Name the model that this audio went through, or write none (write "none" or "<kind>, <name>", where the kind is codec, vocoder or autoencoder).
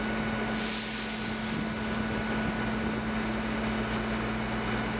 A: none